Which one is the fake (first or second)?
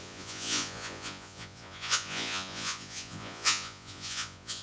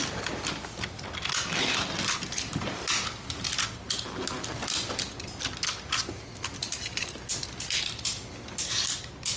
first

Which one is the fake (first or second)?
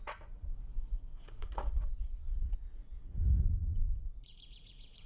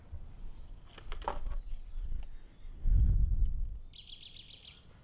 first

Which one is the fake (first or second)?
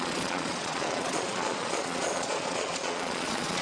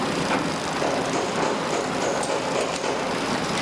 first